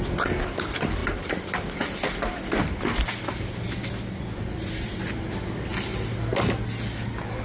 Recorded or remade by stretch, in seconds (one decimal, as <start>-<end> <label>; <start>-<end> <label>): 0.0-7.4 recorded